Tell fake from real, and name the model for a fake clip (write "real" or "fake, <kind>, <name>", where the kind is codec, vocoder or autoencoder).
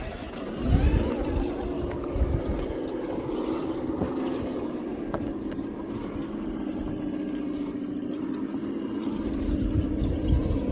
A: real